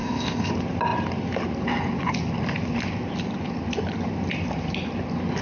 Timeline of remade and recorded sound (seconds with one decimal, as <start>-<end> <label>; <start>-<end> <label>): 0.0-0.5 remade; 0.5-5.4 recorded